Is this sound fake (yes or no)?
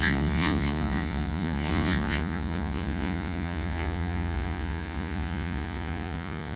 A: yes